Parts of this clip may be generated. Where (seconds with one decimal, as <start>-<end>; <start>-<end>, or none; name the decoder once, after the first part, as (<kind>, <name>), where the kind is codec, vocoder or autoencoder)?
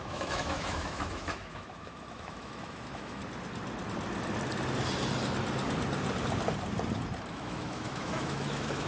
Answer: 0.0-3.2 (autoencoder, DAC-VAE); 7.3-8.9